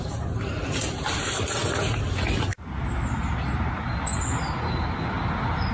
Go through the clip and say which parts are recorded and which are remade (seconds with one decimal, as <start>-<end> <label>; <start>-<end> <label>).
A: 0.0-5.7 recorded